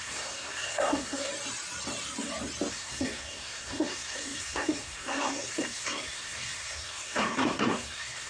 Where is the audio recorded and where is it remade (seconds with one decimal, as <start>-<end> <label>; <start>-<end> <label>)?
0.0-1.3 remade; 1.3-2.7 recorded; 2.7-8.3 remade